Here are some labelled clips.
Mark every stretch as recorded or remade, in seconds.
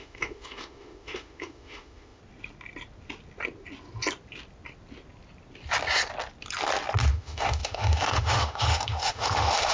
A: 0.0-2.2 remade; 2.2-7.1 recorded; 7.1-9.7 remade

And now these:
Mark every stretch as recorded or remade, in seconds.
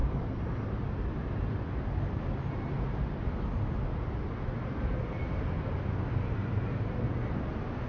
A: 0.0-0.5 remade; 0.5-3.9 recorded; 3.9-5.2 remade; 5.2-6.4 recorded; 6.4-7.0 remade; 7.0-7.9 recorded